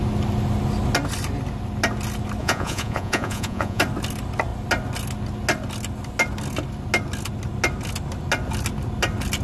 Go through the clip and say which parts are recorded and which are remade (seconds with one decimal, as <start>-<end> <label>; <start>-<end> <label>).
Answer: 0.0-2.4 recorded; 2.4-3.8 remade; 3.8-9.4 recorded

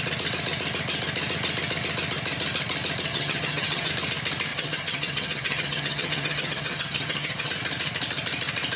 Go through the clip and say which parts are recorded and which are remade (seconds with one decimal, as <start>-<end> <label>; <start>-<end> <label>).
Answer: 0.0-3.1 recorded; 3.1-3.9 remade; 3.9-4.5 recorded; 4.5-7.5 remade; 7.5-8.8 recorded